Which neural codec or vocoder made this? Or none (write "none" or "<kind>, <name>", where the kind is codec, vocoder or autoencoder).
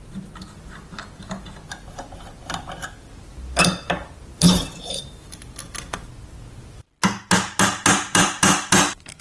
none